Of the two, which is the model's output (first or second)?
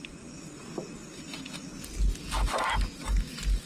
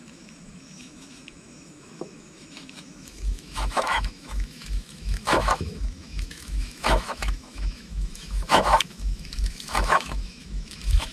second